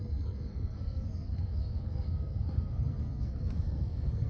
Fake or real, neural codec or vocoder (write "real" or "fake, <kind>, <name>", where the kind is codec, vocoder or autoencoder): fake, codec, SNAC